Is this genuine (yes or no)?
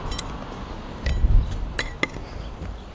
yes